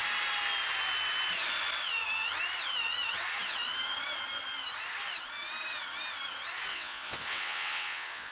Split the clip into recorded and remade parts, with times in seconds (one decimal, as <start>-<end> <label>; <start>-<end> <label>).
0.0-6.7 recorded; 6.7-8.3 remade